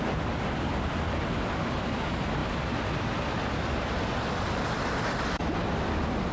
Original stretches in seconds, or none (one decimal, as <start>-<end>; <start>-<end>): 0.0-6.3